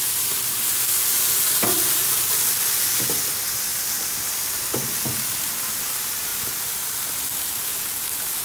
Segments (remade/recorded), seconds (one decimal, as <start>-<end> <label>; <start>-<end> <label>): 0.0-8.4 recorded